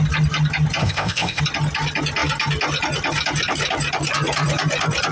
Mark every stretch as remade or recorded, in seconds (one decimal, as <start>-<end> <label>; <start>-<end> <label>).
0.0-0.8 recorded; 0.8-1.4 remade; 1.4-5.1 recorded